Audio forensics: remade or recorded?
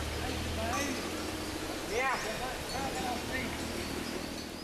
recorded